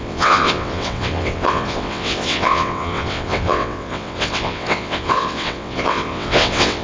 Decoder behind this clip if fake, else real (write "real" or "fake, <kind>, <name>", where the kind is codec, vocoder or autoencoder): fake, vocoder, WaveNeXt